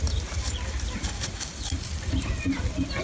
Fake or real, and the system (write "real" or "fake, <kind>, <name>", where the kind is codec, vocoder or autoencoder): real